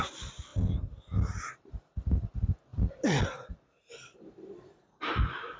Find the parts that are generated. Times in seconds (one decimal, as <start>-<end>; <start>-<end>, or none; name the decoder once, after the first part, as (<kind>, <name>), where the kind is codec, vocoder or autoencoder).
2.7-4.6 (vocoder, BigVGAN v2)